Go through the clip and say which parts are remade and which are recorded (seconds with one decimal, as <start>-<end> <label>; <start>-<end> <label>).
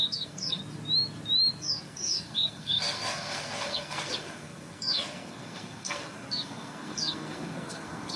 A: 0.0-0.6 remade; 0.6-1.6 recorded; 1.6-8.2 remade